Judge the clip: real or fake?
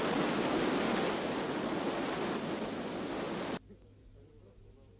real